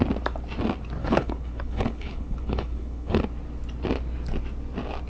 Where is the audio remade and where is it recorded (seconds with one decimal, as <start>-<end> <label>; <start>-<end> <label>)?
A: 0.0-1.0 recorded; 1.0-3.2 remade; 3.2-5.1 recorded